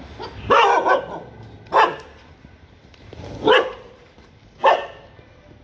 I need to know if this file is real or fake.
real